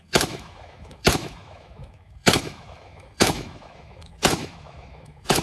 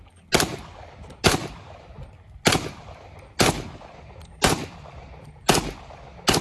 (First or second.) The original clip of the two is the second